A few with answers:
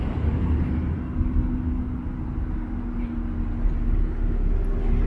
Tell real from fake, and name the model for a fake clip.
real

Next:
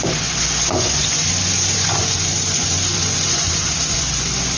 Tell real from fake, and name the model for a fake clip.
fake, vocoder, Vocos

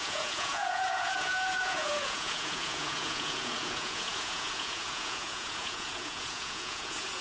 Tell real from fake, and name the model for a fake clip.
fake, vocoder, Vocos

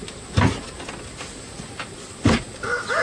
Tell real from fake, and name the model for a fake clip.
real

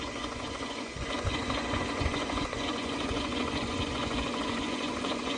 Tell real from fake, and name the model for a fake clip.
fake, vocoder, Vocos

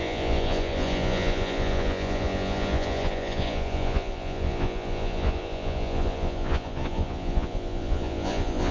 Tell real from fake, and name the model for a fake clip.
fake, vocoder, Vocos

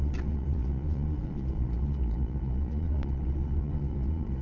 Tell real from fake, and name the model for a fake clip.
fake, vocoder, Vocos